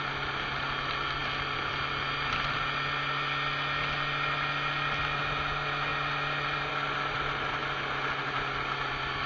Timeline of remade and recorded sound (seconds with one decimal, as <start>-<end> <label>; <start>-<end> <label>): 0.0-9.3 recorded